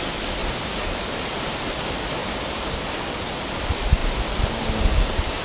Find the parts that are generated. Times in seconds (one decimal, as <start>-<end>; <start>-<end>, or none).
none